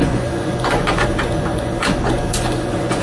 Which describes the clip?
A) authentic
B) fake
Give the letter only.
B